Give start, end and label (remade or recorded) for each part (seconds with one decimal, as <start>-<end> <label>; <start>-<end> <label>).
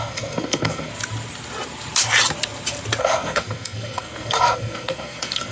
0.0-0.9 remade; 0.9-3.0 recorded; 3.0-5.5 remade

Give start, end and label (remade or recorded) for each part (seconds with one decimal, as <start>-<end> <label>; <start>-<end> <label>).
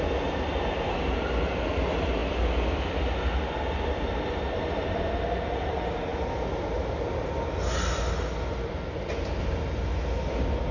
0.0-10.7 recorded